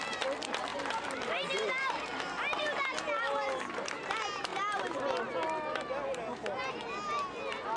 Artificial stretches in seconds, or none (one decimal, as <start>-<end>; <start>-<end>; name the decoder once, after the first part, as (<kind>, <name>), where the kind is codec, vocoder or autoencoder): 0.7-2.2 (vocoder, BigVGAN v2); 4.5-5.0